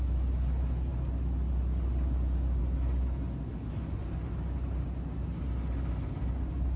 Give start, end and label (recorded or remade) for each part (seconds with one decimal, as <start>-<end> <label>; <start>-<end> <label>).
0.0-6.8 recorded